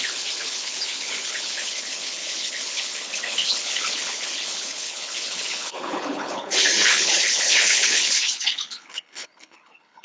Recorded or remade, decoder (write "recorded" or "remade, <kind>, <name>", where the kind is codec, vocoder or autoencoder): remade, codec, HILCodec